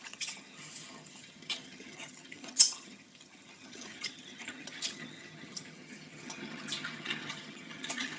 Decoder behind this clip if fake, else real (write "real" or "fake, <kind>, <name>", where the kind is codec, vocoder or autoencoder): fake, vocoder, HiFi-GAN